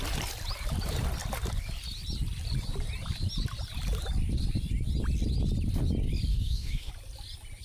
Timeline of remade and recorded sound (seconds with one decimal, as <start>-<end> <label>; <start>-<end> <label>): 0.0-6.3 recorded; 6.3-6.9 remade; 6.9-7.6 recorded